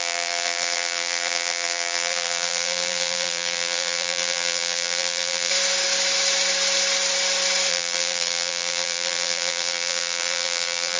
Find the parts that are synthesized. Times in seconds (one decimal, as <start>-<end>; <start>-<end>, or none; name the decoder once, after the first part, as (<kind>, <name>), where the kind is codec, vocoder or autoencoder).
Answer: 0.0-5.5 (vocoder, BigVGAN v2); 7.7-11.0